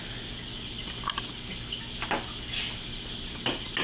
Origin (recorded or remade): recorded